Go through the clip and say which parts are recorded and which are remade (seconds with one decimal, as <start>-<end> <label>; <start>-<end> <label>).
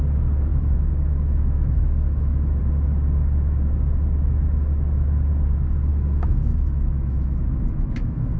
0.0-0.5 recorded; 0.5-2.6 remade; 2.6-5.9 recorded; 5.9-8.4 remade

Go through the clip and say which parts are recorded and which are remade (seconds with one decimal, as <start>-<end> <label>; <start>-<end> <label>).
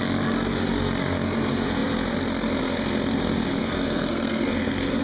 0.0-3.6 recorded; 3.6-5.0 remade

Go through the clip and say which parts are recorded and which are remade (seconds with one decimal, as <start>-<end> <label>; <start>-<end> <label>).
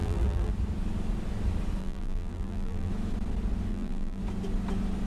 0.0-0.5 remade; 0.5-1.8 recorded; 1.8-2.9 remade; 2.9-3.7 recorded; 3.7-4.2 remade; 4.2-5.1 recorded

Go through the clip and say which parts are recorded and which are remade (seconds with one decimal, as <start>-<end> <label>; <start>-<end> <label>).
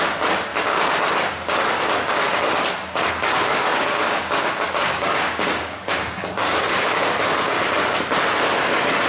0.0-3.4 recorded; 3.4-7.6 remade; 7.6-9.1 recorded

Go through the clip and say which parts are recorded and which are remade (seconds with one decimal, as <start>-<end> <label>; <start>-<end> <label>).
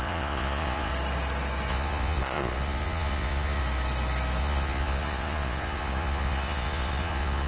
0.0-0.9 remade; 0.9-1.7 recorded; 1.7-3.6 remade; 3.6-4.4 recorded; 4.4-7.5 remade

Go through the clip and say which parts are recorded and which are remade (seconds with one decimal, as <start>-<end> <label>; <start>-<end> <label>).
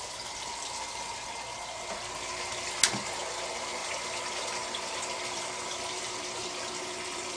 0.0-3.8 recorded; 3.8-7.4 remade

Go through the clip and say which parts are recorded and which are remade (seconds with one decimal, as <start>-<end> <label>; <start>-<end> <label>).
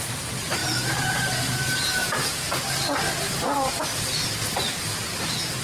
0.0-5.6 recorded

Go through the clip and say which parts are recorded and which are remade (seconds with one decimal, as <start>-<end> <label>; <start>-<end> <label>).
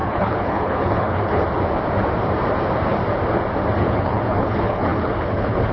0.0-1.4 remade; 1.4-3.8 recorded; 3.8-5.7 remade